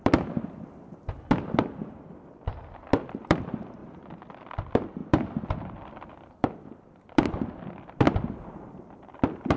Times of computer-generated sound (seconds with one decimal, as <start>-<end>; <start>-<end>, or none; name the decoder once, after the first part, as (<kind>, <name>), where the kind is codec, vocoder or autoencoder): 0.0-1.8 (vocoder, BigVGAN v2); 3.0-3.8; 4.5-9.6